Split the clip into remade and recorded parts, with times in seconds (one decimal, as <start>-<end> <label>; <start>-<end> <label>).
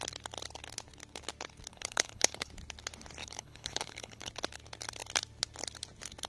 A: 0.0-1.7 recorded; 1.7-2.5 remade; 2.5-3.2 recorded; 3.2-4.3 remade; 4.3-6.3 recorded